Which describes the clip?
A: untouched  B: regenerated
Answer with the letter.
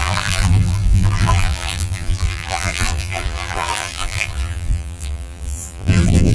B